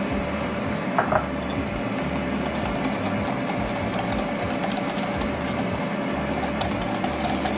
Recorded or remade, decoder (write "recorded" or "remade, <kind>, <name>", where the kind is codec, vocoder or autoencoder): recorded